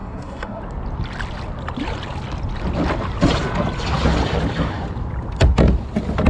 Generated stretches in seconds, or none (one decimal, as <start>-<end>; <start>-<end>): 0.0-0.6